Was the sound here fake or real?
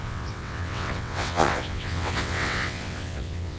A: fake